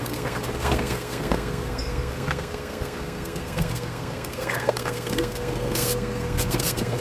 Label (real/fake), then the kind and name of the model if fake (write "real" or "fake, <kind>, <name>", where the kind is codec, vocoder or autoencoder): fake, codec, SNAC